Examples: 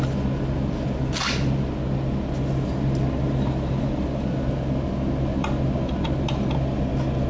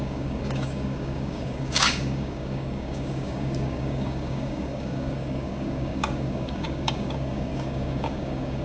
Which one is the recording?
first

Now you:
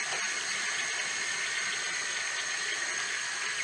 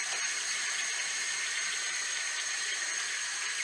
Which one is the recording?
first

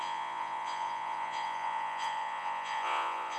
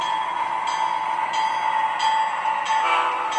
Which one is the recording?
second